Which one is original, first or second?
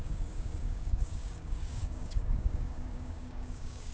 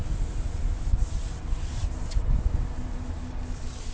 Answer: second